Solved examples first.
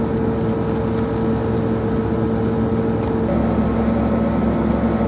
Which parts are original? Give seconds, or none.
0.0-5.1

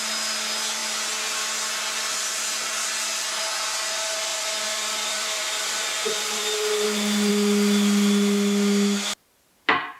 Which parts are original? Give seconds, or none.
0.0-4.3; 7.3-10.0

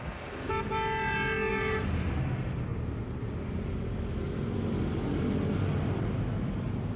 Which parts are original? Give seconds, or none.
0.0-1.5; 2.2-2.7; 3.4-7.0

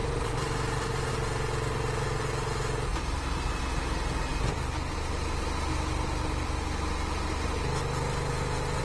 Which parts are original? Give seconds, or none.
1.1-2.9; 3.6-8.8

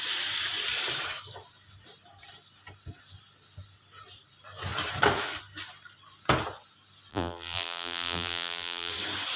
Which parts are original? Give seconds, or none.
0.0-7.1; 8.9-9.4

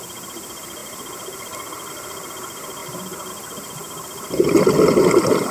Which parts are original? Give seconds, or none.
0.8-1.9